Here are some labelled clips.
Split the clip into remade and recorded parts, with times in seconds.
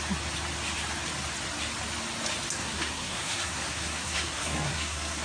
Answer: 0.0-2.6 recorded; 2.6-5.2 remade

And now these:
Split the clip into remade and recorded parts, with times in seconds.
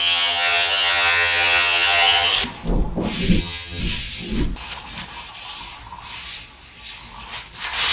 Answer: 0.0-2.3 remade; 2.3-3.4 recorded; 3.4-3.8 remade; 3.8-7.9 recorded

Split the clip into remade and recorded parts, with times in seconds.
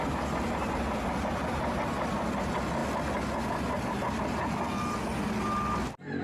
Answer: 0.0-6.2 recorded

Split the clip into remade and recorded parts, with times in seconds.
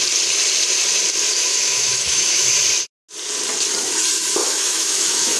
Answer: 0.0-1.3 recorded; 1.3-2.5 remade; 2.5-4.4 recorded; 4.4-5.4 remade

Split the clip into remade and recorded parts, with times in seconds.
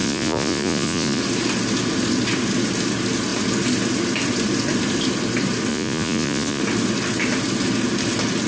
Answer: 0.0-1.2 remade; 1.2-5.7 recorded; 5.7-6.6 remade; 6.6-8.5 recorded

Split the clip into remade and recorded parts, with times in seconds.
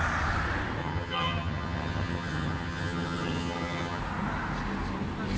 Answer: 0.0-0.8 recorded; 0.8-4.0 remade; 4.0-5.4 recorded